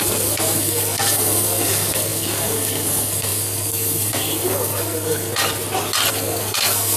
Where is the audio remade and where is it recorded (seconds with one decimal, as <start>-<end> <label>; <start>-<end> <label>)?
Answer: 0.0-5.4 remade; 5.4-6.1 recorded; 6.1-7.0 remade